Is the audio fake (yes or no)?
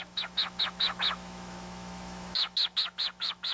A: yes